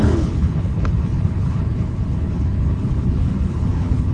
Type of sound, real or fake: fake